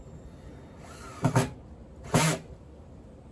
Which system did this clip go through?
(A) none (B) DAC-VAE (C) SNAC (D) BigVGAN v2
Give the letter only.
A